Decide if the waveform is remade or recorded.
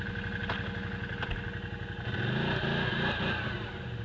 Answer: recorded